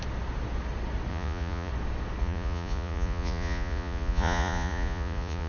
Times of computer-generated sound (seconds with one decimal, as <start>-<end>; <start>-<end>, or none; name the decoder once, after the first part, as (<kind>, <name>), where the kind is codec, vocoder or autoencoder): 1.1-1.7 (vocoder, Vocos); 2.2-5.5